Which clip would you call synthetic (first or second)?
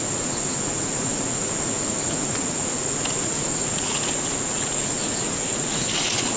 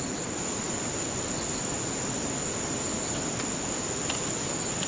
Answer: first